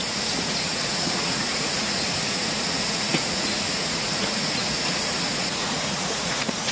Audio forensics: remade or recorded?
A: remade